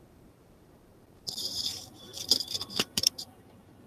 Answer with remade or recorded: remade